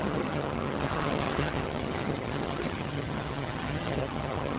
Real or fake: fake